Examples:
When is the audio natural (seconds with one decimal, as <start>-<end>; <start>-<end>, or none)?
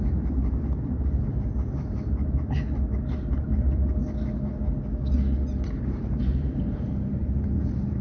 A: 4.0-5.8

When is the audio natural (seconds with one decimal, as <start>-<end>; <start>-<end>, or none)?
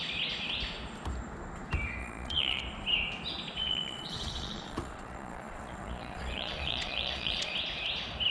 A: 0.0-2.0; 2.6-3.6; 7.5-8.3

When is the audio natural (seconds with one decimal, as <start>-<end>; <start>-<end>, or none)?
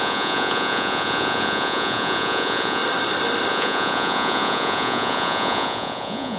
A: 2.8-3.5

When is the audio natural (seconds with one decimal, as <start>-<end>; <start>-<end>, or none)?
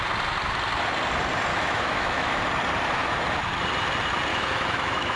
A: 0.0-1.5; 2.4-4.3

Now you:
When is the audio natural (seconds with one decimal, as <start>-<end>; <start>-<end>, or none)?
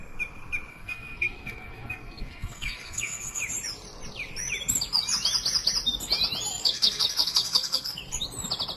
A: 0.0-0.7; 3.4-6.6; 8.0-8.8